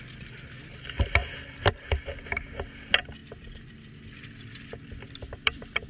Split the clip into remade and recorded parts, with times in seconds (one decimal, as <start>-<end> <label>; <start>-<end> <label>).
0.0-3.2 recorded; 3.2-5.9 remade